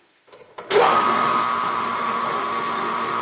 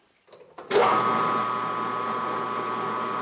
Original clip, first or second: second